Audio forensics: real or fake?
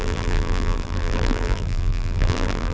fake